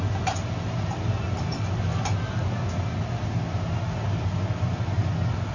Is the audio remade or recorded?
recorded